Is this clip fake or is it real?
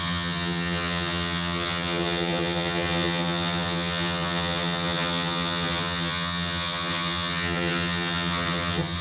fake